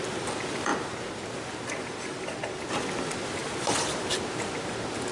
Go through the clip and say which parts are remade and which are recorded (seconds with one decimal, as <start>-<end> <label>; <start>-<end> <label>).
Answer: 0.0-5.1 recorded